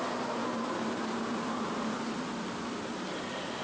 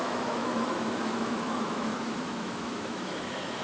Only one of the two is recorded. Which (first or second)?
first